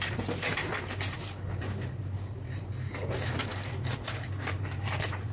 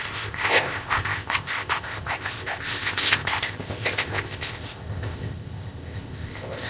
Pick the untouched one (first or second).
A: first